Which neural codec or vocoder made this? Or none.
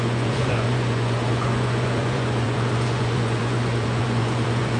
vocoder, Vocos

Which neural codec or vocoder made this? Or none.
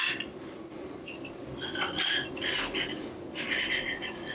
none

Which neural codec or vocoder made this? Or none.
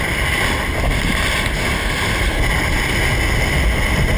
none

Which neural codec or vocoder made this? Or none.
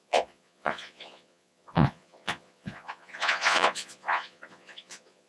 vocoder, Vocos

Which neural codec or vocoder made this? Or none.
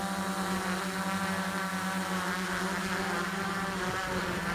none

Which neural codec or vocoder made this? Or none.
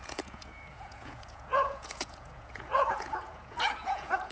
vocoder, Vocos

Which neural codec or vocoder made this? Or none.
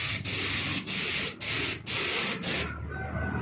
none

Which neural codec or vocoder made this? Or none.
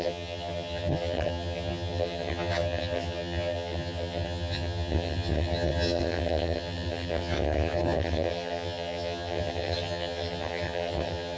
vocoder, HiFi-GAN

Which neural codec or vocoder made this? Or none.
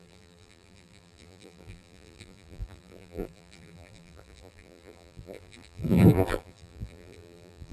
vocoder, BigVGAN v2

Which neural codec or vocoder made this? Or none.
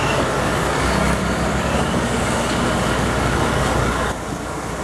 codec, DAC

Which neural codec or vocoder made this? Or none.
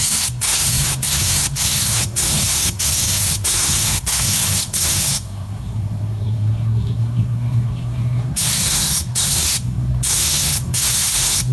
codec, SNAC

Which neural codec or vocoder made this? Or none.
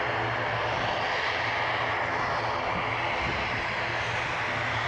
none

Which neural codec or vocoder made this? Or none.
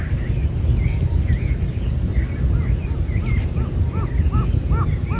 none